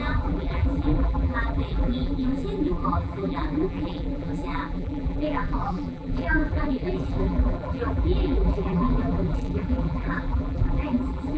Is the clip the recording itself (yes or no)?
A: no